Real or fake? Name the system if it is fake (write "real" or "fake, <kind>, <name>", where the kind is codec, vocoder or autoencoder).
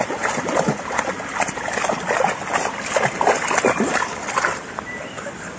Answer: real